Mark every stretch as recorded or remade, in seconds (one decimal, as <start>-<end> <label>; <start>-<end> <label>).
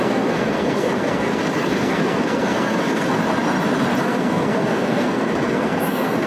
0.0-3.2 remade; 3.2-4.0 recorded; 4.0-6.3 remade